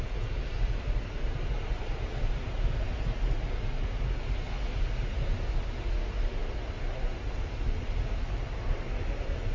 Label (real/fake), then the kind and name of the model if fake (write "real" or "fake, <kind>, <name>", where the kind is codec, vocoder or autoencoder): real